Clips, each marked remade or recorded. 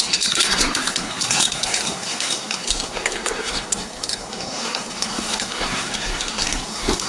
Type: remade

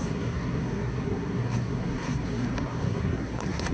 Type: remade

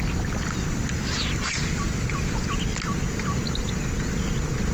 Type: recorded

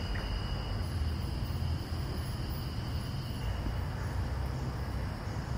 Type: recorded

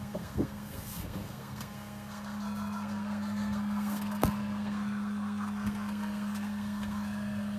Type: remade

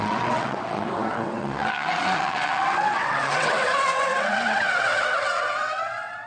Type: remade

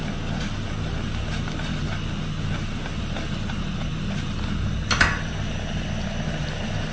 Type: recorded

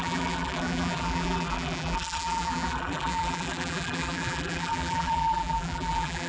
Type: remade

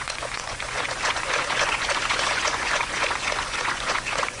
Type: remade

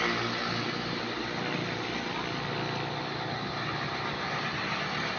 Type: recorded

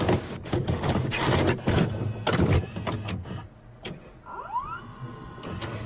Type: recorded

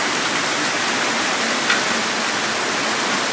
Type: recorded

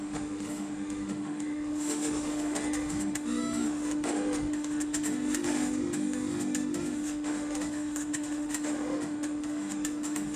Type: remade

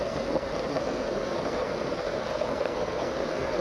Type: remade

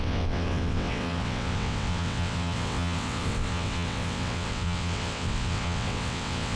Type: remade